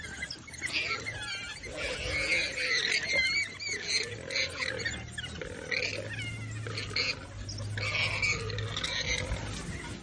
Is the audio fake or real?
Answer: real